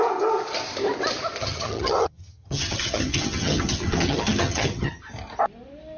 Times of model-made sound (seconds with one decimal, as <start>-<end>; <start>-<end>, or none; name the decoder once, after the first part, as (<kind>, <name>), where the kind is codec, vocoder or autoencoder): 1.4-5.0 (vocoder, HiFi-GAN)